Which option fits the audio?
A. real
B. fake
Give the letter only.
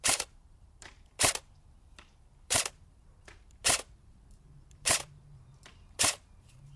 B